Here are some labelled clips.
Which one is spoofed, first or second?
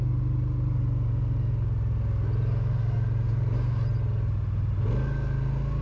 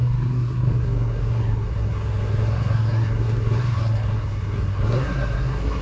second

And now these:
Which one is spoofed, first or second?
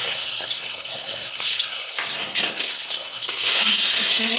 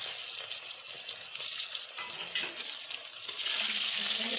first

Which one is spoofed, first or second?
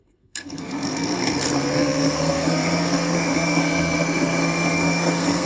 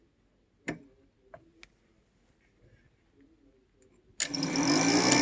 first